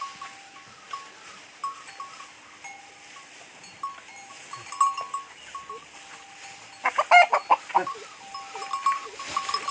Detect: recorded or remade recorded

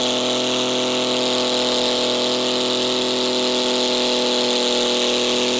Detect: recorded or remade recorded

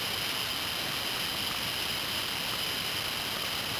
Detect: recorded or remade recorded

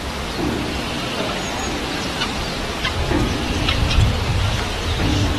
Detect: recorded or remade recorded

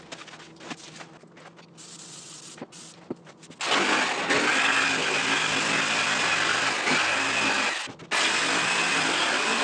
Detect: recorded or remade recorded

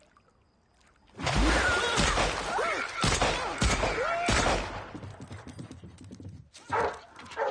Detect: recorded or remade recorded